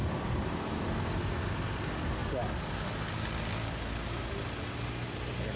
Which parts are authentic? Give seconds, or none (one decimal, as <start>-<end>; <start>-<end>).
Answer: 1.0-5.6